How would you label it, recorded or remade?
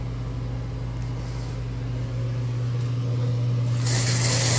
recorded